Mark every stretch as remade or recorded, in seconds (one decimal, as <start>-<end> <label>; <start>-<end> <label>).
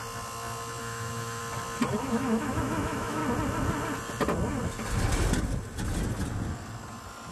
0.0-0.8 recorded; 0.8-1.4 remade; 1.4-2.0 recorded; 2.0-3.2 remade; 3.2-7.3 recorded